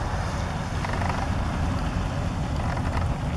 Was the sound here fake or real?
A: real